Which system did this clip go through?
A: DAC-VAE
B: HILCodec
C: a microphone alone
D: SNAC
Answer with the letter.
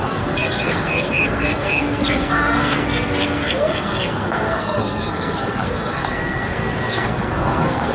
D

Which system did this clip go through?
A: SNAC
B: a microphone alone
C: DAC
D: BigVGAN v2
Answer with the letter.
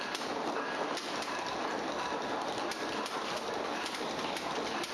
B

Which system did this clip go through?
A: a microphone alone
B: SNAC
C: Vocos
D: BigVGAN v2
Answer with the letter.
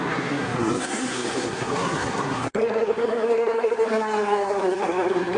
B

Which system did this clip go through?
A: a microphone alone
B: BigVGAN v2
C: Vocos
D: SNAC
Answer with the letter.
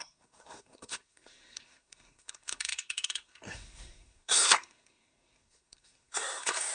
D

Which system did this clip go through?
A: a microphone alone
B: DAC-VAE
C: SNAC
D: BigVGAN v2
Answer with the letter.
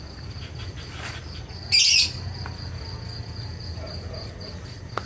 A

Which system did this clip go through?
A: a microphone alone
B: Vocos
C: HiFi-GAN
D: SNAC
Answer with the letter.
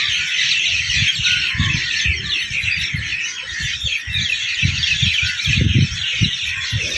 A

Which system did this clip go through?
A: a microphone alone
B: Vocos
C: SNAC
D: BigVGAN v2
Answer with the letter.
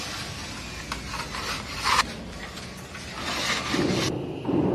A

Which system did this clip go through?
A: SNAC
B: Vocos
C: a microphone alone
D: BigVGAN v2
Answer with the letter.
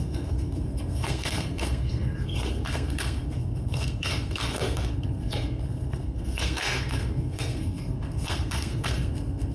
A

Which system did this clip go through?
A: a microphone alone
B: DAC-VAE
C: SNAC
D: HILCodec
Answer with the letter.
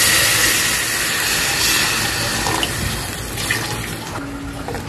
A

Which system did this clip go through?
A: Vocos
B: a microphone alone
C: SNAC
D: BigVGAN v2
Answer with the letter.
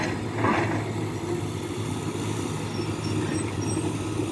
B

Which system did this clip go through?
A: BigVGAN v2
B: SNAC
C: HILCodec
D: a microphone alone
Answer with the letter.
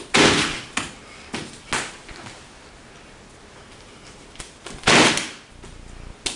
D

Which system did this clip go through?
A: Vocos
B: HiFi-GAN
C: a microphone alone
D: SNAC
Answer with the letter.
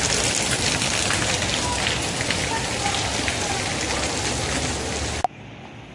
C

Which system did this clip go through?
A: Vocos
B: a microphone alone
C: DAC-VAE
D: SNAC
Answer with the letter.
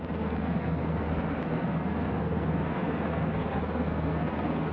D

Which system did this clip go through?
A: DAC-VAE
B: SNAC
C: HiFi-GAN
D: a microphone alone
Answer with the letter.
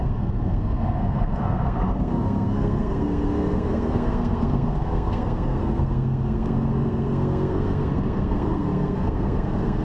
B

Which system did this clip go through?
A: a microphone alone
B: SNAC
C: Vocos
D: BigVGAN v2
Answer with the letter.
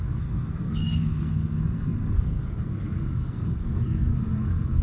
B